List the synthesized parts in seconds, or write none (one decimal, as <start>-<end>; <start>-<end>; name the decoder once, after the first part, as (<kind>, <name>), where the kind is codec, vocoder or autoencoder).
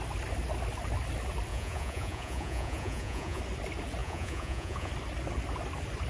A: 1.5-3.4 (vocoder, Vocos); 4.0-4.9